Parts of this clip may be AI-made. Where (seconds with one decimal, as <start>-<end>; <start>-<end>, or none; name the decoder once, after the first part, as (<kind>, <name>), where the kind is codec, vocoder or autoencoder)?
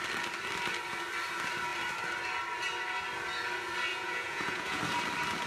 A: 3.9-4.8 (vocoder, Vocos)